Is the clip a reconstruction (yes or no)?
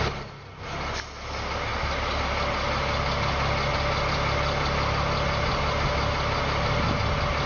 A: no